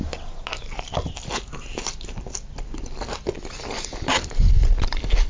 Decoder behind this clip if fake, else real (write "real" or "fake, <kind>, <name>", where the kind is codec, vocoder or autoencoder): real